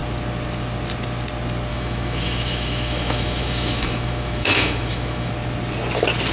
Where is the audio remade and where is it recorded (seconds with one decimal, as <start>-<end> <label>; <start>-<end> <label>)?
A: 0.0-1.7 recorded; 1.7-5.3 remade; 5.3-6.3 recorded